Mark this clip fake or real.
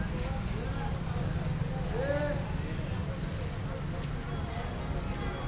real